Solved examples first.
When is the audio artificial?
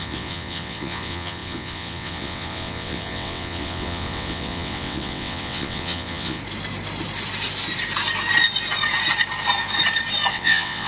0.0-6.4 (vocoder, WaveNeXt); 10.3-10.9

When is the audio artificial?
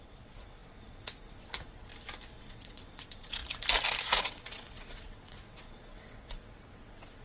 0.0-1.9 (vocoder, WaveNeXt); 2.4-3.4; 4.2-7.2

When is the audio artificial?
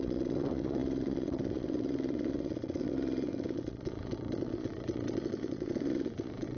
0.0-6.6 (vocoder, WaveNeXt)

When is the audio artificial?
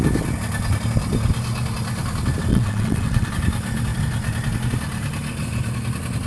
2.5-3.3 (vocoder, WaveNeXt)